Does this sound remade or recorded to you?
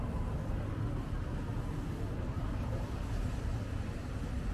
recorded